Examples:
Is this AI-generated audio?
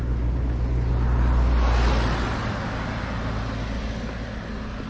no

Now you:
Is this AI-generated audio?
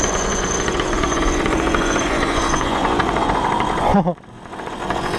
yes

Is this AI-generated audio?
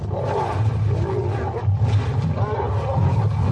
no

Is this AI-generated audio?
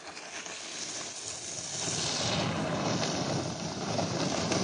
no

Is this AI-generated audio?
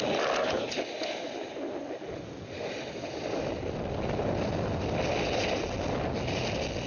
no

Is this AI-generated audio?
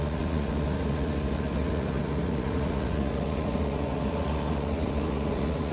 yes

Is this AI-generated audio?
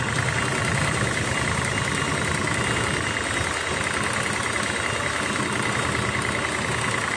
no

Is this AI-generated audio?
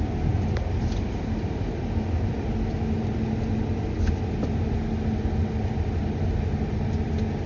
no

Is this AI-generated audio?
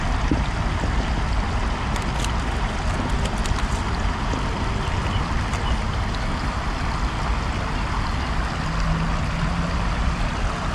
no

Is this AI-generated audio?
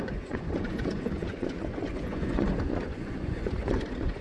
yes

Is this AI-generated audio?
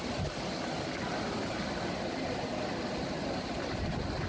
no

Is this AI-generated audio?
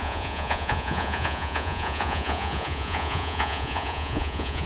yes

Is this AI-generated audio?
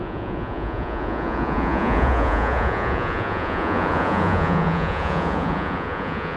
yes